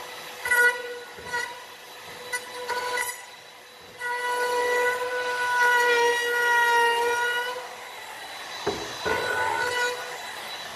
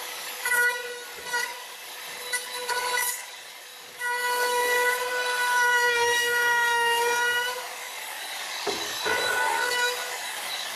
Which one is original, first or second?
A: first